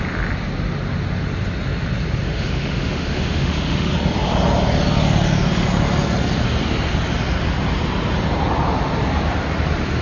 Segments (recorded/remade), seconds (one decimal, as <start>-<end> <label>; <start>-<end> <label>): 0.0-2.2 recorded; 2.2-3.9 remade; 3.9-10.0 recorded